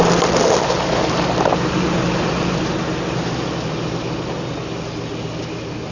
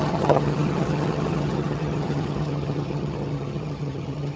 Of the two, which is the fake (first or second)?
second